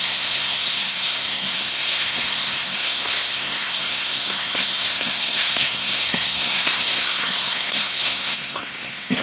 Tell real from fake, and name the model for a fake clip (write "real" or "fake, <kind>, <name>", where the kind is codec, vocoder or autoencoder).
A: fake, codec, SNAC